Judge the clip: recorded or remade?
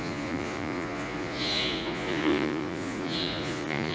remade